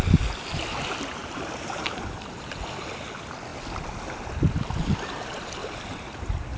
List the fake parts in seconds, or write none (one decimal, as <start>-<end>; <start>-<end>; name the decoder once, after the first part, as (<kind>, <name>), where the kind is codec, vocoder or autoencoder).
1.2-2.6 (vocoder, BigVGAN v2); 5.6-6.6